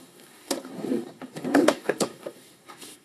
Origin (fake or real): fake